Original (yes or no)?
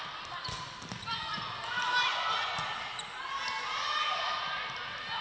yes